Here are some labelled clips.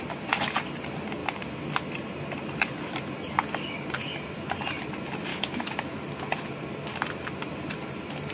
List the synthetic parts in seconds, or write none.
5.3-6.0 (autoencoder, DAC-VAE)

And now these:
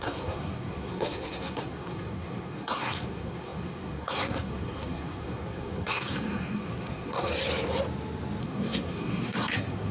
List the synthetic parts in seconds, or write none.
0.0-7.3 (codec, SNAC); 8.4-9.9

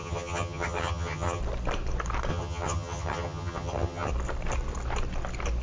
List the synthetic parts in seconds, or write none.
0.0-1.4 (vocoder, HiFi-GAN); 2.3-4.1

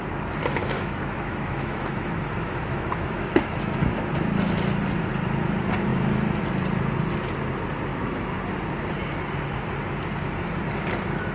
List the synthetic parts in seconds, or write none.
0.6-4.1 (autoencoder, DAC-VAE); 7.9-8.4

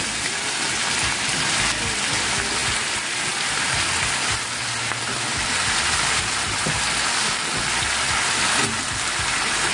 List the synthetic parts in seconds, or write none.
none

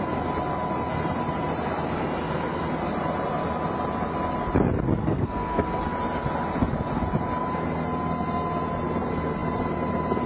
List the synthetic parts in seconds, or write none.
5.0-5.8 (codec, SNAC)

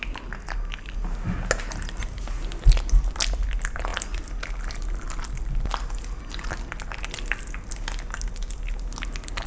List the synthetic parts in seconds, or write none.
none